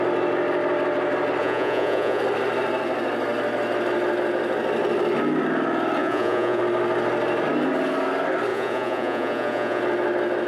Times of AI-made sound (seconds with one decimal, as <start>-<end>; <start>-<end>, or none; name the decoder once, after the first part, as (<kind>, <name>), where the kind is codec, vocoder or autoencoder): 1.4-2.2 (vocoder, Vocos); 6.0-6.6; 8.5-9.8